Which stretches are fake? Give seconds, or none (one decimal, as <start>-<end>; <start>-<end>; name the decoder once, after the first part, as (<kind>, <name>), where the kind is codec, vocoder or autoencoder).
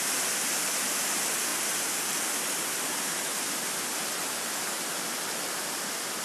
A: none